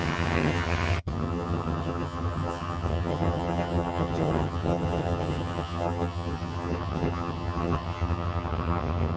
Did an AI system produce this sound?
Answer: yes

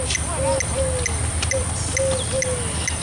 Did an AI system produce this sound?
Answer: no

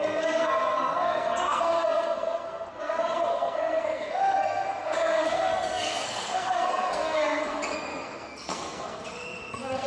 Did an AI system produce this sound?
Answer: yes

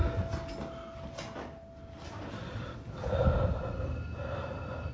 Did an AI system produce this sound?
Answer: no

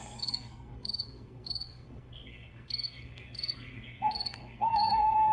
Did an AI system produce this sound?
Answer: yes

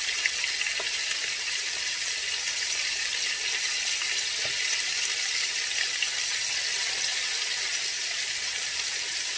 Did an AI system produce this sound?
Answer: no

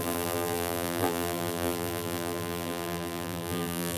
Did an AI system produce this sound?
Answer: yes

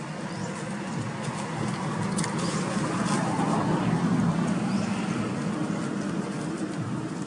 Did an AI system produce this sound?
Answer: no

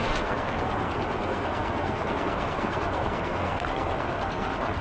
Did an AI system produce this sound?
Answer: yes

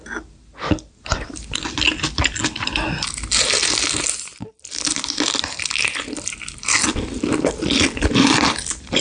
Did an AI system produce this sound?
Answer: no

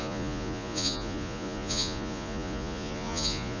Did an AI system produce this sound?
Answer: yes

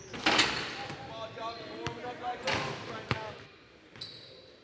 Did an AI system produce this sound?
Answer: no